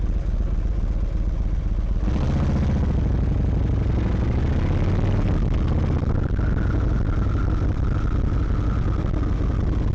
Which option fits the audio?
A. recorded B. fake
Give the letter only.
A